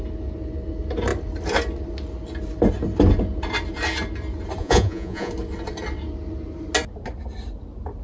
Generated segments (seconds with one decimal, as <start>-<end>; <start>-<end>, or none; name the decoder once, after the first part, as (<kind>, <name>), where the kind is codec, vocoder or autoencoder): 4.6-5.3 (vocoder, Vocos)